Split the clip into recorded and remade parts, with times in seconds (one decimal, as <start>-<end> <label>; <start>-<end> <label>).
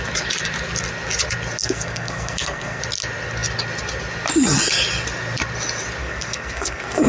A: 0.0-1.6 recorded; 1.6-2.8 remade; 2.8-6.0 recorded; 6.0-7.1 remade